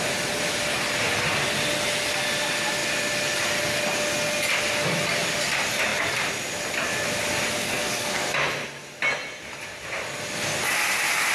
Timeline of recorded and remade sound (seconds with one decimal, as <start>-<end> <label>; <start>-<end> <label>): 0.0-7.6 recorded; 7.6-8.3 remade; 8.3-11.3 recorded